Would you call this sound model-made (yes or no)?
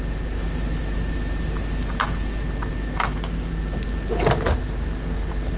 no